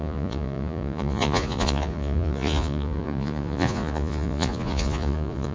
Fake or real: fake